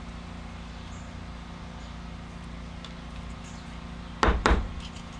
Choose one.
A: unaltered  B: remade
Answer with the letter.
A